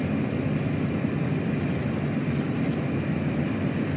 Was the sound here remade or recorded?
recorded